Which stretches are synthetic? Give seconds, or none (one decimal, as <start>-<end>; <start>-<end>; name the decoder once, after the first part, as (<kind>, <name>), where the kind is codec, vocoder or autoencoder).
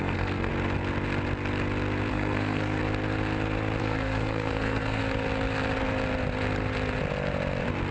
0.0-0.5 (codec, SNAC); 2.1-2.8; 3.8-5.0